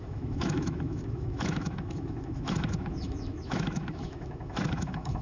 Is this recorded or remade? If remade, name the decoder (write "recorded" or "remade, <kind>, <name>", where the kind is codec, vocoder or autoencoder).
remade, autoencoder, DAC-VAE